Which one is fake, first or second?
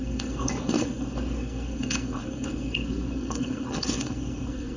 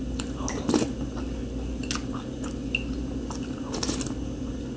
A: first